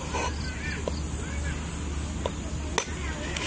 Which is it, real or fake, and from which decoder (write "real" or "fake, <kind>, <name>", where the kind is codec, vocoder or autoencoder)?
real